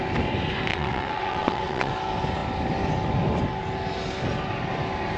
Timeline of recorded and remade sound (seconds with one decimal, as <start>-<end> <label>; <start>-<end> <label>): 0.0-0.7 recorded; 0.7-1.9 remade; 1.9-5.2 recorded